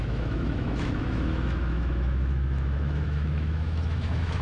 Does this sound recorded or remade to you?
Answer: remade